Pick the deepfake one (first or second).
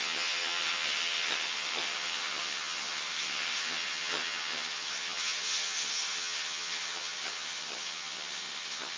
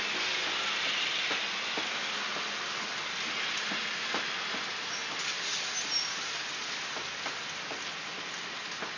first